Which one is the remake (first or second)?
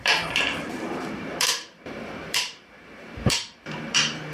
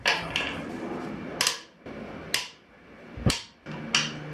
first